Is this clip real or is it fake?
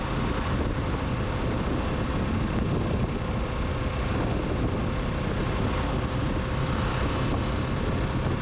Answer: real